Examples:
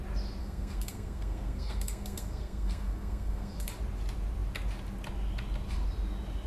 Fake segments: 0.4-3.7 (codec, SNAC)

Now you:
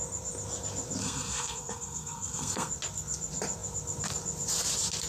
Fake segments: 1.0-2.7 (codec, SNAC)

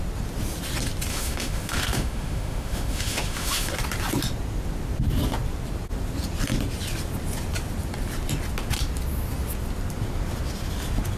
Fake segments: 1.1-3.7 (autoencoder, DAC-VAE)

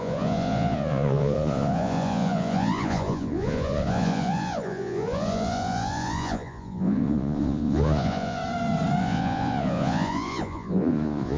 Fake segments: 0.0-8.4 (vocoder, Vocos); 9.0-11.4

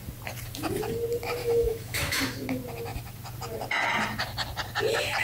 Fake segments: 1.4-2.2 (autoencoder, DAC-VAE)

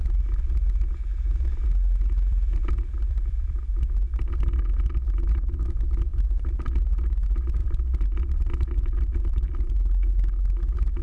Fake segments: 2.3-3.8 (vocoder, BigVGAN v2); 6.1-6.8; 7.6-9.7

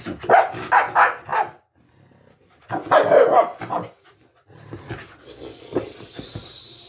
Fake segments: none